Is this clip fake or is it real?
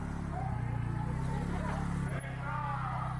real